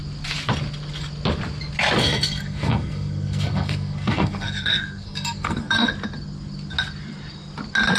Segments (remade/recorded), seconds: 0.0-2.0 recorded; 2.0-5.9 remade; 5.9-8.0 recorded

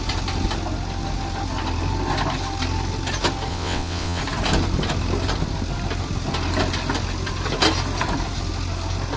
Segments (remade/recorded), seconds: 0.0-3.5 recorded; 3.5-4.2 remade; 4.2-9.2 recorded

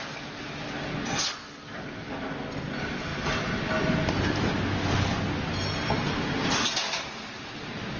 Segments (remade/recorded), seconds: 0.0-8.0 recorded

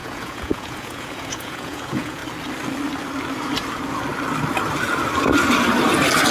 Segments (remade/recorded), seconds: 0.0-2.2 remade; 2.2-6.3 recorded